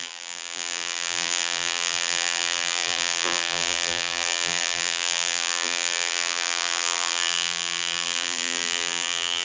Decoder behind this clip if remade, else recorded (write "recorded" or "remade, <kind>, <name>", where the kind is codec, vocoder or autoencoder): remade, vocoder, BigVGAN v2